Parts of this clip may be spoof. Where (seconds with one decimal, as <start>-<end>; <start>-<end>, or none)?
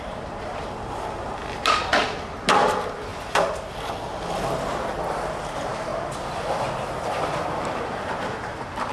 0.0-3.1; 5.5-8.9